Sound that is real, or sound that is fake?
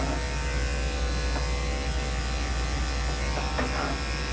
real